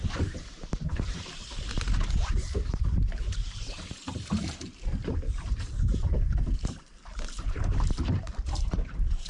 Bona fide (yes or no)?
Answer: no